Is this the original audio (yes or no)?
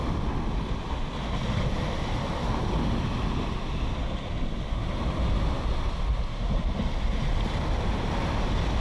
yes